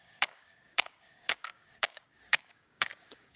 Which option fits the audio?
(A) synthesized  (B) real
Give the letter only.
A